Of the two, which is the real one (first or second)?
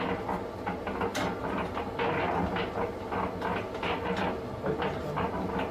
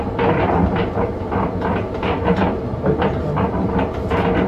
first